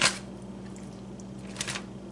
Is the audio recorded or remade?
recorded